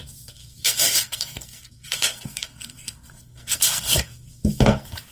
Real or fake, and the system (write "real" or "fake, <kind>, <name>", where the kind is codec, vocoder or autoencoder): fake, codec, SNAC